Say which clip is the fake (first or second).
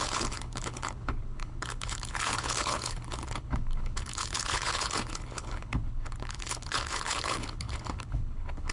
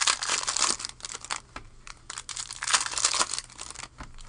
first